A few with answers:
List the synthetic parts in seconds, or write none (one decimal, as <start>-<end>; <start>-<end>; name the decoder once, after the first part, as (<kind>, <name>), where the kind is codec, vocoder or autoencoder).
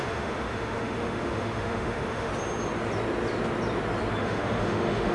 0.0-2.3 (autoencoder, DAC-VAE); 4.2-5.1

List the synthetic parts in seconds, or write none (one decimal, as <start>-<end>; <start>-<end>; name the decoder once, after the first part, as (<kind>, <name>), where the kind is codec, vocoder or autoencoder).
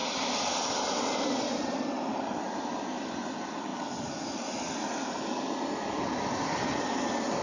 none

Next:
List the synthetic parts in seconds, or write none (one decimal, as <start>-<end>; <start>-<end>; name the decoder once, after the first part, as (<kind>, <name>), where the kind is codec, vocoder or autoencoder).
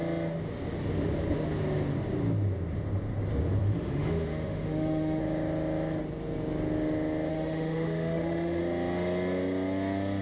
3.6-5.2 (autoencoder, DAC-VAE); 7.3-8.6